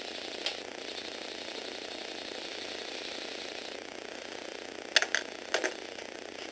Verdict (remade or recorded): recorded